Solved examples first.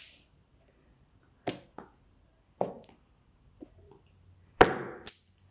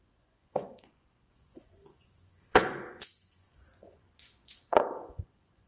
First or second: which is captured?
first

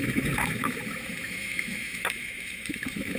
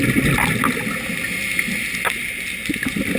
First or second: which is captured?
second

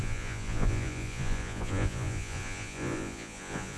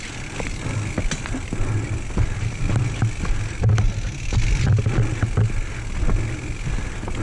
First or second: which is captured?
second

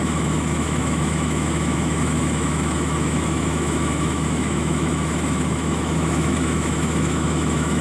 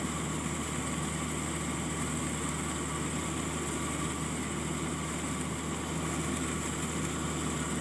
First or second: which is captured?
second